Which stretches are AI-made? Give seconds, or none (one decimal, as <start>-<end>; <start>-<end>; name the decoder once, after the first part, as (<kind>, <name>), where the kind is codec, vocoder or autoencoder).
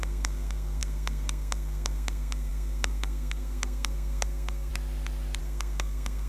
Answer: 0.0-4.7 (codec, SNAC); 5.4-6.3